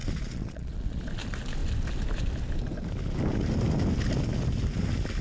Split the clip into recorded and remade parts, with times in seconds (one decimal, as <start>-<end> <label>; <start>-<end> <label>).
0.0-1.1 remade; 1.1-5.2 recorded